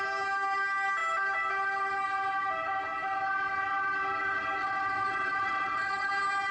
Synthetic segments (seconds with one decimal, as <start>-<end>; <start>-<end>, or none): 4.6-6.1